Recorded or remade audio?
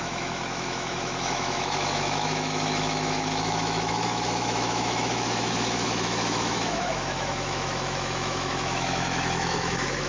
remade